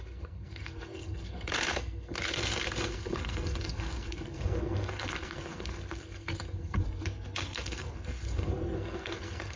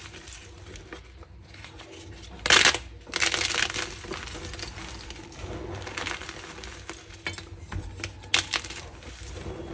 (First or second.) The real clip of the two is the second